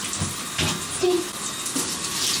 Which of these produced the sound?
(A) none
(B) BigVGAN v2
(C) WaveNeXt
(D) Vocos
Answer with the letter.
A